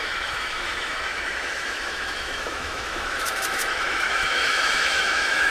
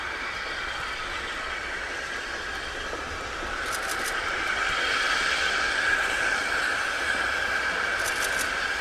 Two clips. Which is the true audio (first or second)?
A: second